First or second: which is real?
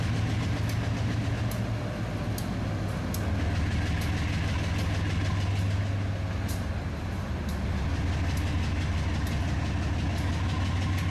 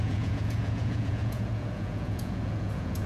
first